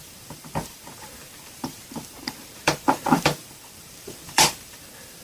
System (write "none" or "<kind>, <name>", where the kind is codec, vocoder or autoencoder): vocoder, BigVGAN v2